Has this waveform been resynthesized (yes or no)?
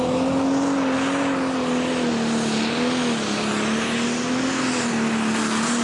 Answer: no